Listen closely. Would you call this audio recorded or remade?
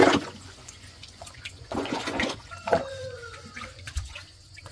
remade